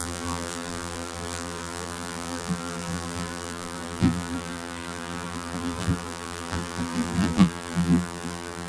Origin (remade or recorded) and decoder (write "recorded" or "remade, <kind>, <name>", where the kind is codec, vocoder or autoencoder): remade, vocoder, BigVGAN v2